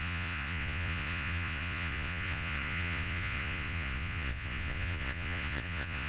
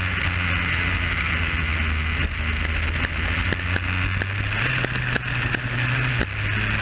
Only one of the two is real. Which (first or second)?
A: second